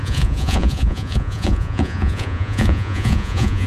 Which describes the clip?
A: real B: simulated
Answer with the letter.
B